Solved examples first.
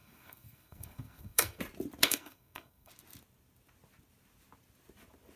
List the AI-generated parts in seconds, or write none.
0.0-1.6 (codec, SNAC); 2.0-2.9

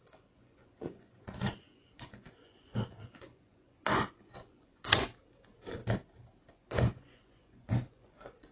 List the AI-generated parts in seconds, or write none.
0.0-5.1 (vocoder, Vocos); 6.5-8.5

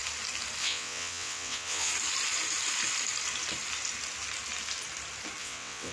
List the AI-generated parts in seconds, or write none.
0.6-1.9 (vocoder, WaveNeXt); 5.4-5.9

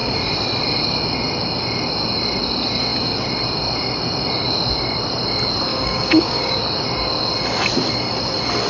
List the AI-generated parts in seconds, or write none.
5.7-6.6 (codec, DAC)